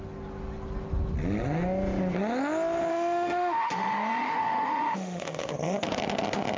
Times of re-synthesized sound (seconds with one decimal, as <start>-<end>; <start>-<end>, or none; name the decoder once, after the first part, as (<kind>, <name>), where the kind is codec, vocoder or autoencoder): 2.9-5.5 (autoencoder, DAC-VAE)